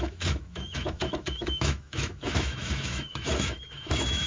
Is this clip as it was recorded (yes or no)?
no